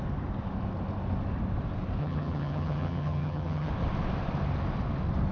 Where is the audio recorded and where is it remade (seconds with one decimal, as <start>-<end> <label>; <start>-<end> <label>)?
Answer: 0.0-2.0 recorded; 2.0-3.7 remade; 3.7-5.3 recorded